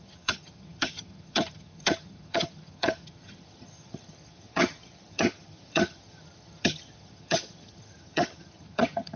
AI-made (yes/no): yes